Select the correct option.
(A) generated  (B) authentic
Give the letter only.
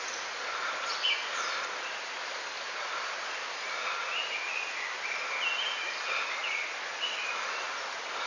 B